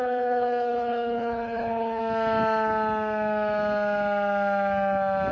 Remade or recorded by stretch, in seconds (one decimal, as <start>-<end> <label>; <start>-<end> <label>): 0.0-2.0 remade; 2.0-5.3 recorded